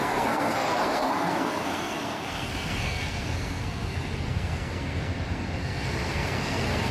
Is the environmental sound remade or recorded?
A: remade